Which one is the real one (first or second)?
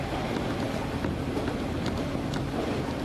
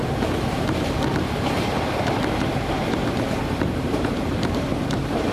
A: first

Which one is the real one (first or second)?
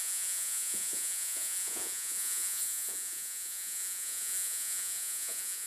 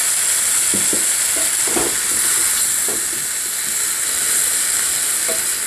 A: second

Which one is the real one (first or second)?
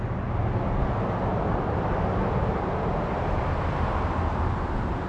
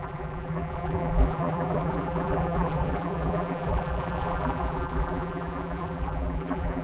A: first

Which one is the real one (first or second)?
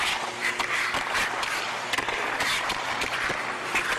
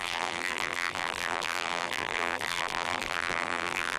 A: first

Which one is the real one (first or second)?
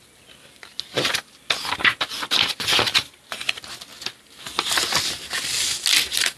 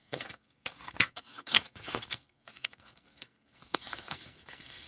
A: first